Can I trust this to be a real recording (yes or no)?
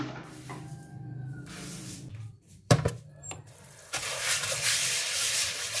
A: no